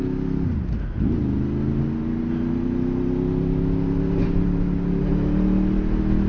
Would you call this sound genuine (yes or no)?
yes